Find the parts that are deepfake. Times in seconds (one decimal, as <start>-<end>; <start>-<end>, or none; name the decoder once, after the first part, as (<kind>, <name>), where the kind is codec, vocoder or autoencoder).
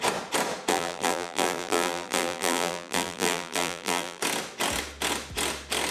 0.7-4.2 (vocoder, BigVGAN v2)